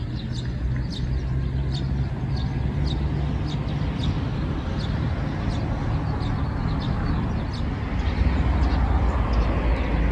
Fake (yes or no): no